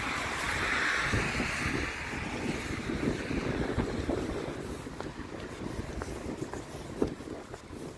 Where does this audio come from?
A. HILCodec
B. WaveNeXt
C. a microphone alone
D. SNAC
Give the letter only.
C